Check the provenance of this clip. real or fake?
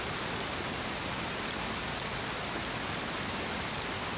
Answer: real